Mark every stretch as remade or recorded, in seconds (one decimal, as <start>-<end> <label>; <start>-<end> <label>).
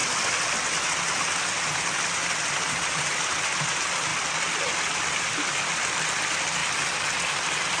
0.0-7.8 recorded